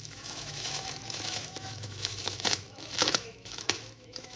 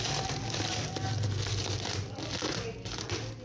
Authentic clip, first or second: second